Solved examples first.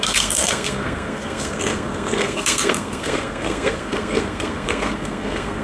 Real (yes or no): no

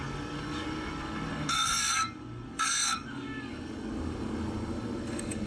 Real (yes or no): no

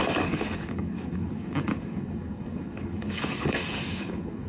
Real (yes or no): no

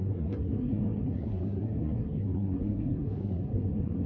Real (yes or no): no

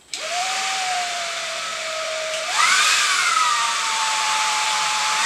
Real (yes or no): no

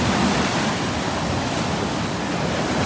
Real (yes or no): yes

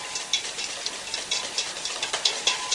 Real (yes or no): yes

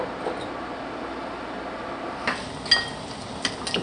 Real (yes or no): yes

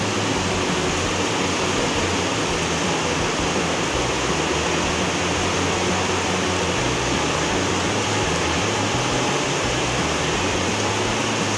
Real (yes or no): yes